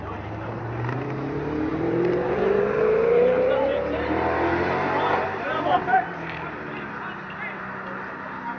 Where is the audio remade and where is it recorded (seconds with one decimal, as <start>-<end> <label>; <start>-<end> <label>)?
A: 0.0-0.6 remade; 0.6-1.7 recorded; 1.7-6.9 remade; 6.9-8.6 recorded